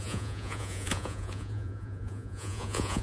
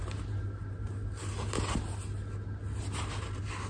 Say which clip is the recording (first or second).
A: second